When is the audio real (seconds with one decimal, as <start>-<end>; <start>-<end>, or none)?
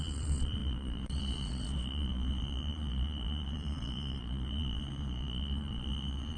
none